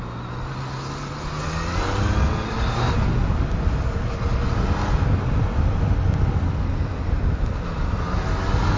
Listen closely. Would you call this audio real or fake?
real